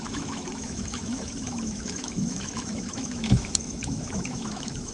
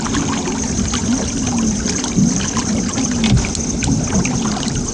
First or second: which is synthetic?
first